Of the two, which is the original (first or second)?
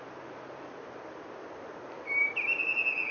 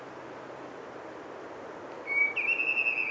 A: second